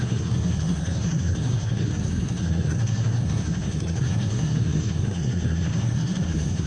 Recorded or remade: remade